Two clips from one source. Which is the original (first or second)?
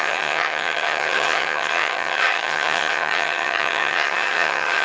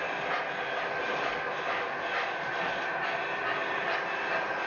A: second